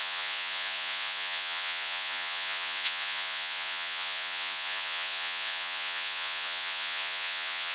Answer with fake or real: fake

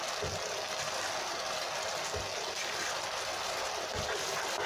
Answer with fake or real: real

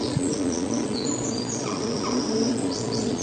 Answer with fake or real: fake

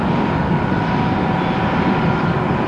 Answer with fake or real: real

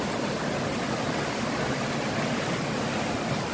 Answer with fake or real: real